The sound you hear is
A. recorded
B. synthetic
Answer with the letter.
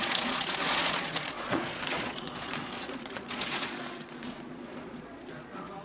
B